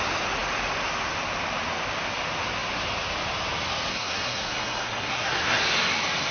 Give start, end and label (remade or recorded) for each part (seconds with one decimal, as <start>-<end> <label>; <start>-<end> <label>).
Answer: 0.0-3.9 recorded; 3.9-5.6 remade; 5.6-6.3 recorded